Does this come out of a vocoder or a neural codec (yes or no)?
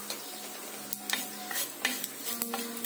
no